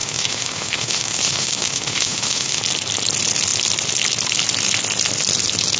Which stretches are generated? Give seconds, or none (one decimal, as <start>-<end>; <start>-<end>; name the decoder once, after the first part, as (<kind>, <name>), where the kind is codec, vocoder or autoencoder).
0.0-2.6 (autoencoder, DAC-VAE)